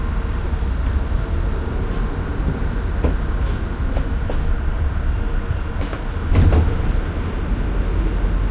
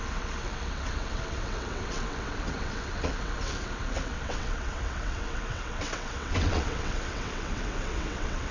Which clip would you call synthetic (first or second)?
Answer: second